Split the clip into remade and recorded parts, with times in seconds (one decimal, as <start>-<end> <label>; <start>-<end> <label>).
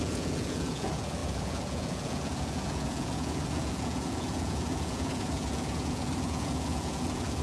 0.0-7.4 remade